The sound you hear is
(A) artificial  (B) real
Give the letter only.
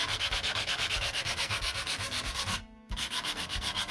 A